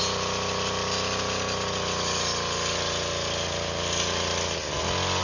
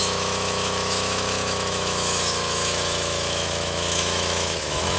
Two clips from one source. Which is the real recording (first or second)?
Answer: first